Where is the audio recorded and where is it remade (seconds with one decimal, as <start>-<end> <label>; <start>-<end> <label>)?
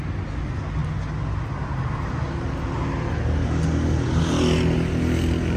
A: 0.0-5.6 recorded